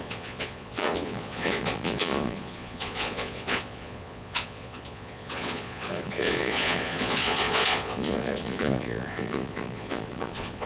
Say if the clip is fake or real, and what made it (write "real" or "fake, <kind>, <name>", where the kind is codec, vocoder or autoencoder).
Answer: fake, vocoder, Vocos